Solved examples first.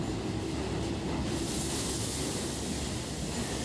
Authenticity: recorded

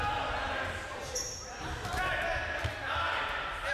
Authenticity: recorded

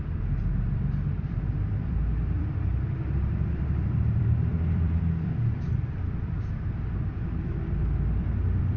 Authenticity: remade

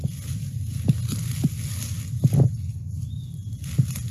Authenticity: recorded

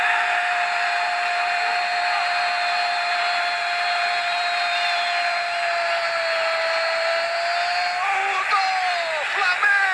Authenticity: recorded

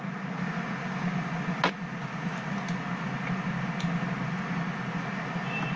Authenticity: recorded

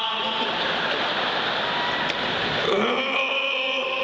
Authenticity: recorded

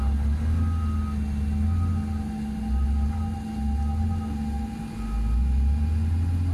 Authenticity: recorded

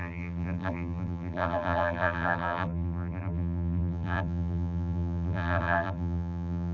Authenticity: remade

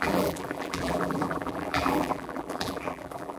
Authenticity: remade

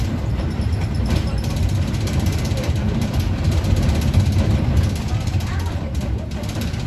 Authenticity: remade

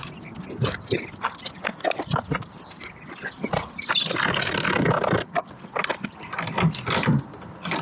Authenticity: recorded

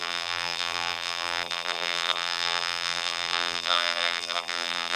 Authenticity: remade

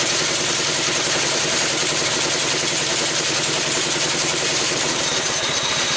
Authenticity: remade